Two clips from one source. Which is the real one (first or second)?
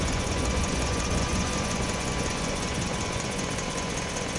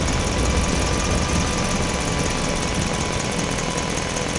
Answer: second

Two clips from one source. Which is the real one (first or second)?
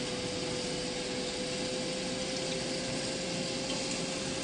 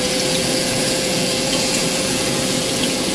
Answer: first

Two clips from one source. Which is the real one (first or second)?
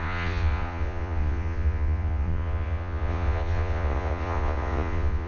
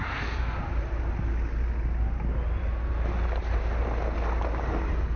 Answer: second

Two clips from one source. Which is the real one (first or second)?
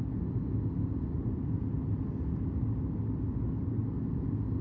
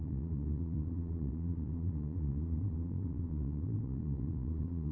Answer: first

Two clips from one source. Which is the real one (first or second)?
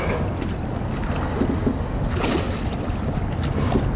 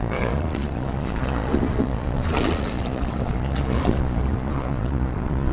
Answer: first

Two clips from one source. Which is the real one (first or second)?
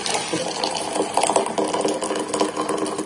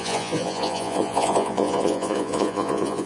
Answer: first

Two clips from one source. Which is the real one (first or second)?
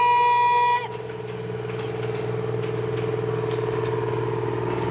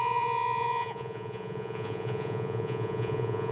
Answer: first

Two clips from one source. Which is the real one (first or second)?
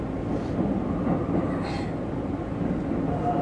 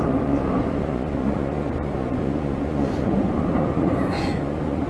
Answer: first